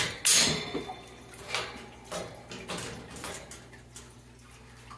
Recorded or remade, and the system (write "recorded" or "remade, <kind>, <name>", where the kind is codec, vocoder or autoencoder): recorded